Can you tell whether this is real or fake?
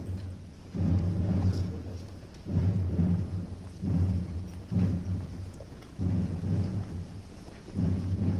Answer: fake